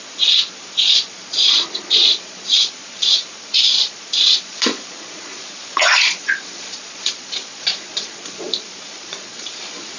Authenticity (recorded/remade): remade